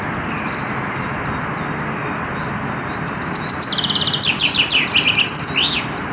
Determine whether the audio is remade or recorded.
recorded